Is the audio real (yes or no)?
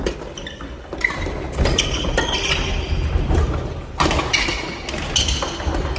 yes